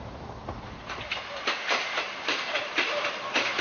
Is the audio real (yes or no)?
yes